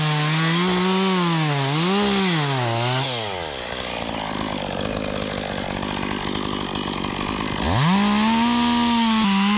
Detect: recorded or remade recorded